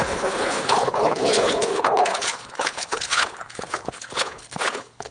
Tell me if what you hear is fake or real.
fake